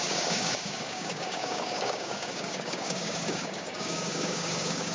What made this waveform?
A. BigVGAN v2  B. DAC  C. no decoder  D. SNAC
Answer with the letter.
B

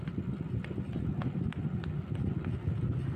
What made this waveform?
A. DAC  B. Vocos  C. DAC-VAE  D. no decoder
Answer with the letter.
D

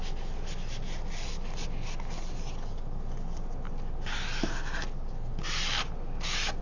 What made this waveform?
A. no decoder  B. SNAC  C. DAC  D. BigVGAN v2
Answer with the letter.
A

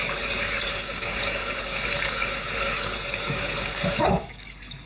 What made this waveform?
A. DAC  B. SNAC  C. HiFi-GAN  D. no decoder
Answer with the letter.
A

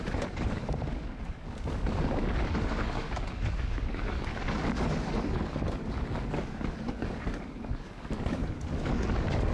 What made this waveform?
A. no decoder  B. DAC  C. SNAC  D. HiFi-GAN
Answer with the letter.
B